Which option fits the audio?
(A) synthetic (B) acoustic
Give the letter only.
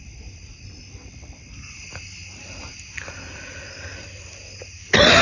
B